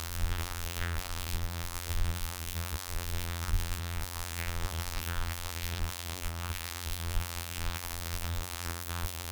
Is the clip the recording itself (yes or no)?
no